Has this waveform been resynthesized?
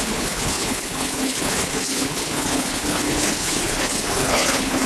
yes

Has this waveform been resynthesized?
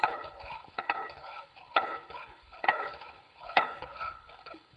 yes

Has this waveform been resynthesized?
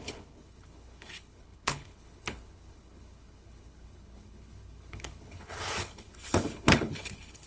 yes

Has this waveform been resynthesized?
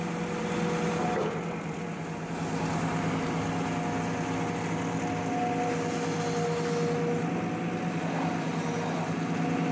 no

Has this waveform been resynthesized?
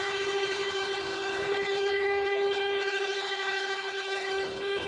yes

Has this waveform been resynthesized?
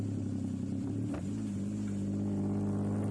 no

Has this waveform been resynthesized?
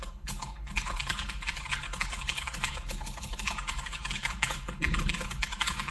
yes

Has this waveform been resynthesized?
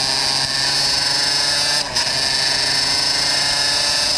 no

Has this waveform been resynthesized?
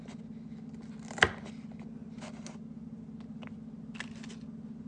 no